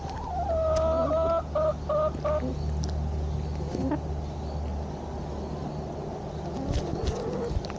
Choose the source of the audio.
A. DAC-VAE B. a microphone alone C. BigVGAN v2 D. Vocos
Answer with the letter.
B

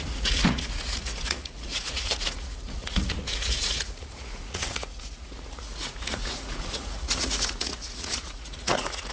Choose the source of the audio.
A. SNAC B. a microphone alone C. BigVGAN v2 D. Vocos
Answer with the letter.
D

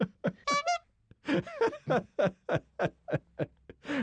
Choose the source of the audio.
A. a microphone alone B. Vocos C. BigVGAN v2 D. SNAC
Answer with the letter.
A